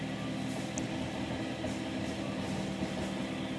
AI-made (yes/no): no